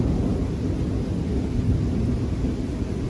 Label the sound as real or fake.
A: real